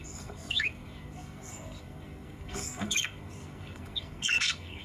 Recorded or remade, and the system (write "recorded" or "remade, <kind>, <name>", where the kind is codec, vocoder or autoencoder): remade, codec, SNAC